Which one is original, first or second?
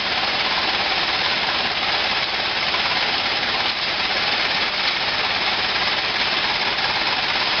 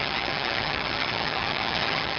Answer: first